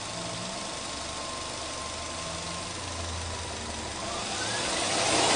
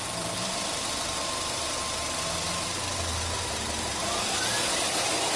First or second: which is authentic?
first